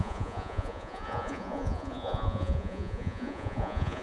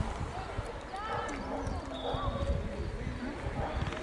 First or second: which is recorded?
second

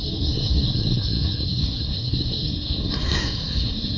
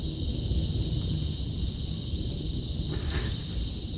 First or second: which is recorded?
second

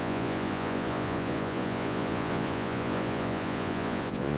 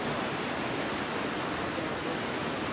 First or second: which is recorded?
second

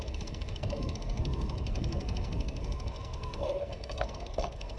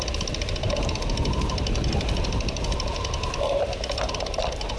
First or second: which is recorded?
second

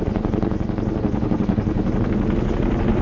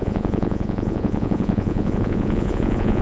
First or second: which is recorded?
first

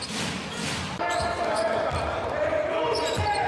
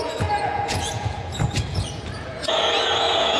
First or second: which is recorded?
first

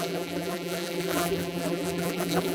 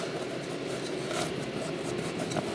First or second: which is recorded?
second